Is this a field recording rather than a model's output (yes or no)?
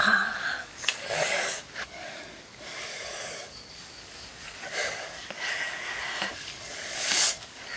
no